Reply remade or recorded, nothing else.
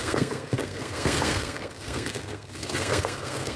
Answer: remade